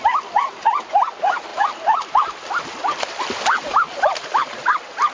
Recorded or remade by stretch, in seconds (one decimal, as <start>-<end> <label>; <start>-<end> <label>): 0.0-5.1 recorded